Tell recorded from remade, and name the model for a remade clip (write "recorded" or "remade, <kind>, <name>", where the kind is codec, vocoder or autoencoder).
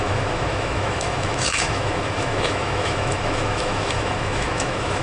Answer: remade, autoencoder, DAC-VAE